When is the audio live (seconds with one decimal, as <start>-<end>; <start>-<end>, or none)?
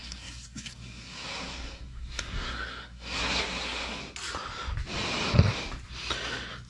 4.0-6.7